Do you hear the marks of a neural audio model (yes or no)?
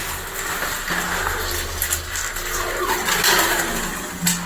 no